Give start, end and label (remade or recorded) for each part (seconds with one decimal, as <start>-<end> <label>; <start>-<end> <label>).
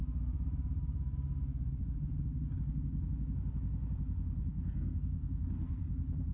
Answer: 0.0-4.5 recorded; 4.5-5.8 remade; 5.8-6.3 recorded